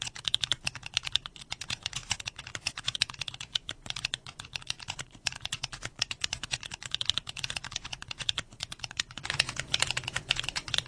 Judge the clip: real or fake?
fake